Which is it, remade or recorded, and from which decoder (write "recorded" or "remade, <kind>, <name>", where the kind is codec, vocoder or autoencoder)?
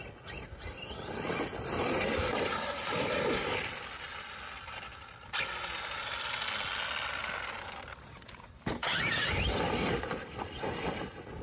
recorded